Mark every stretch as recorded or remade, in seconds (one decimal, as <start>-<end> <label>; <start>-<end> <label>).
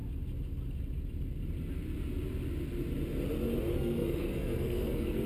0.0-3.7 recorded; 3.7-5.3 remade